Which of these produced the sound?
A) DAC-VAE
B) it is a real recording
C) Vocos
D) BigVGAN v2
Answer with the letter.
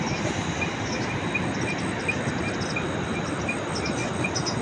B